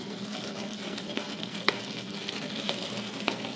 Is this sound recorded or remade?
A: remade